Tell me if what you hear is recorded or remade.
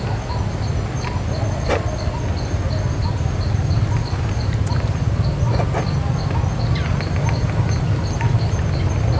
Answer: recorded